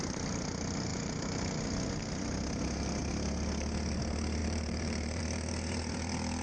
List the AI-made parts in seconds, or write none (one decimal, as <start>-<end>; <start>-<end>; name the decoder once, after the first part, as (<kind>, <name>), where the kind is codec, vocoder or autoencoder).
4.4-5.2 (vocoder, BigVGAN v2)